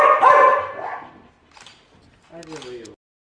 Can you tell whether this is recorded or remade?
recorded